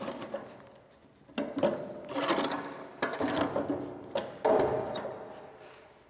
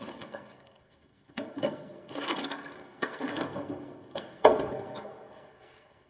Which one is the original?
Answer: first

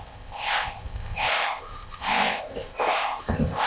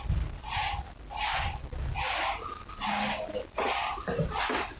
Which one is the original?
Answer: second